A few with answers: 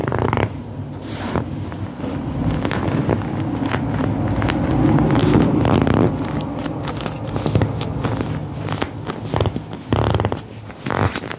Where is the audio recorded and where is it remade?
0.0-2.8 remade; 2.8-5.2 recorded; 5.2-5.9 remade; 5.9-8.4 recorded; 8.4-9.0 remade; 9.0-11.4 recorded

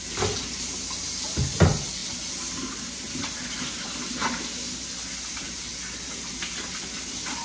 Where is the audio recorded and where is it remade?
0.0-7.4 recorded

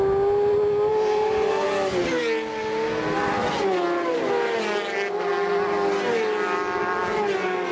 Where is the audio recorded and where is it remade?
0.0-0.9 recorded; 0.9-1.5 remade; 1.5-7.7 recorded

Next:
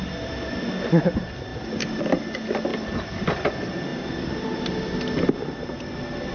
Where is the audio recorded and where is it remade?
0.0-1.5 recorded; 1.5-2.0 remade; 2.0-2.7 recorded; 2.7-3.5 remade; 3.5-3.9 recorded; 3.9-5.3 remade; 5.3-6.3 recorded

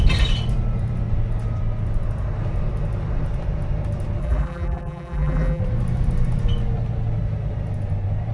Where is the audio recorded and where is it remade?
0.0-4.2 recorded; 4.2-5.6 remade; 5.6-8.3 recorded